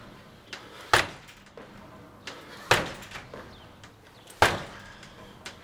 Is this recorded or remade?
recorded